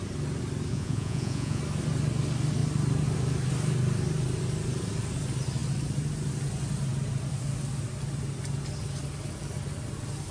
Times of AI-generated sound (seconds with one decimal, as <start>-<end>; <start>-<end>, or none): 0.7-1.6